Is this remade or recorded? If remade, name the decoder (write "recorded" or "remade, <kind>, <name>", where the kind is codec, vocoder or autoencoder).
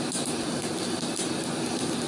recorded